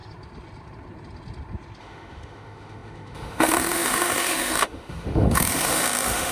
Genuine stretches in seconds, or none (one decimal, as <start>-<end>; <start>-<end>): 0.0-1.8